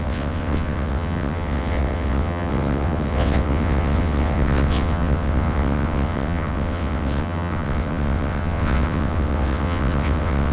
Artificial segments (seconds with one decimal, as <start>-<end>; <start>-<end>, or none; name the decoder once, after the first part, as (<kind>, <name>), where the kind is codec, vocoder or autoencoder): 0.0-10.5 (vocoder, WaveNeXt)